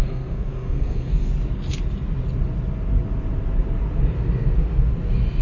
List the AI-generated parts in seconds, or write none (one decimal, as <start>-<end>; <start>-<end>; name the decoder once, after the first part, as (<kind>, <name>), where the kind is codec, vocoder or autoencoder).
0.0-1.3 (codec, SNAC)